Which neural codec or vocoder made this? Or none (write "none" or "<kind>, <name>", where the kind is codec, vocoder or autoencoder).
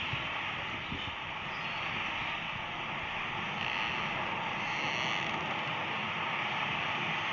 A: none